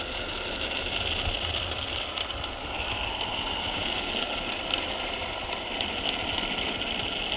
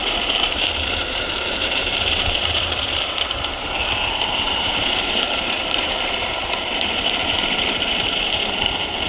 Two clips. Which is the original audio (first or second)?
first